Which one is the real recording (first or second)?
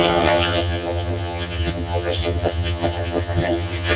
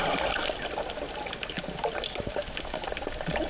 second